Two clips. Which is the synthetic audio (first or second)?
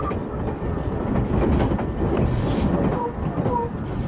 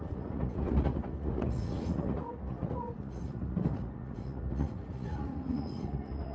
second